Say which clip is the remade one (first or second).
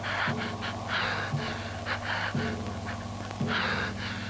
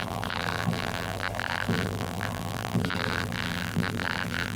second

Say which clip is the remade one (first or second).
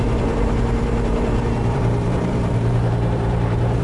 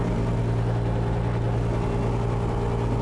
first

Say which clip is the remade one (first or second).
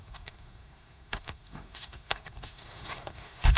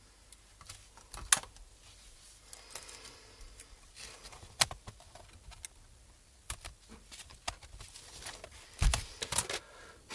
first